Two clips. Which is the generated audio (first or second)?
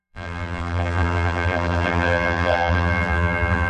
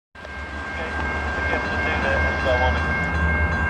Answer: first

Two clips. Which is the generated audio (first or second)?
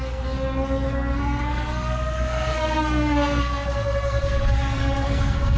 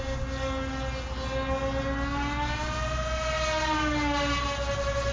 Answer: first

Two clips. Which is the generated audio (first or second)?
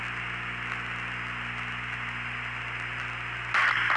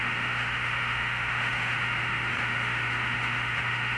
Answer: second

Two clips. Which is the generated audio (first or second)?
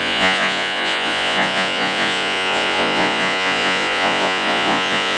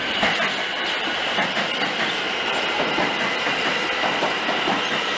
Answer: first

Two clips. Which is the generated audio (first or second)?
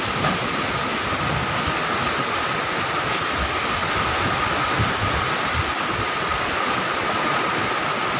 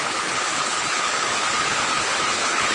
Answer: second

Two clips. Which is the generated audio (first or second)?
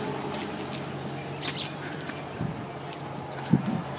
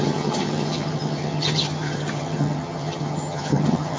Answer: second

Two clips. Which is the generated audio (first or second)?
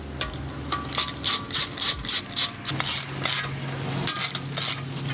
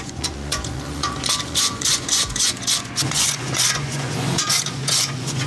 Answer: second